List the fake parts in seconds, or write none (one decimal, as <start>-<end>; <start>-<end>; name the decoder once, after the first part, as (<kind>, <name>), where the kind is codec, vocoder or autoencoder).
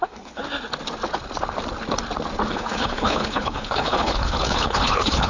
0.0-0.4 (codec, HILCodec); 2.5-5.3